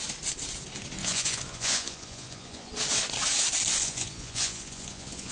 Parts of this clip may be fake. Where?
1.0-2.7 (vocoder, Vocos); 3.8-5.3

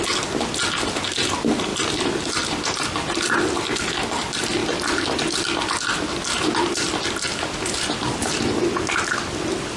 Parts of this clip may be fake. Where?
none

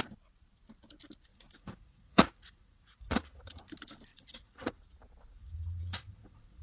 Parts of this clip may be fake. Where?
1.3-3.6 (vocoder, Vocos); 4.1-4.7; 5.4-6.6

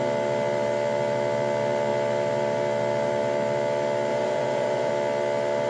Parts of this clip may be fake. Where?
4.1-4.9 (vocoder, Vocos)

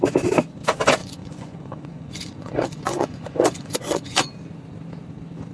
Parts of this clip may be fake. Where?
1.0-4.3 (vocoder, Vocos)